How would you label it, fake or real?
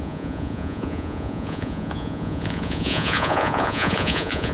fake